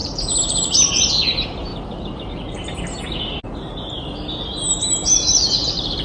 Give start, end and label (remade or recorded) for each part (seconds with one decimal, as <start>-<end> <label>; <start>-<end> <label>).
0.0-1.1 remade; 1.1-6.0 recorded